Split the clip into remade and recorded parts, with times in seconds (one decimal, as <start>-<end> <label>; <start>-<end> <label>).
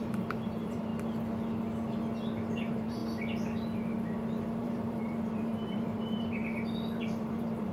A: 0.0-0.9 remade; 0.9-2.5 recorded; 2.5-3.0 remade; 3.0-4.6 recorded; 4.6-6.4 remade; 6.4-7.0 recorded; 7.0-7.7 remade